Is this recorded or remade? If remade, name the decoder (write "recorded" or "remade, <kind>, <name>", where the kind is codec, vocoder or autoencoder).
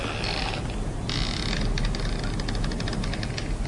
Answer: recorded